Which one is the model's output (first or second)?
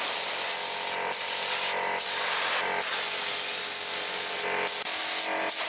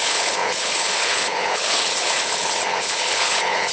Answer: second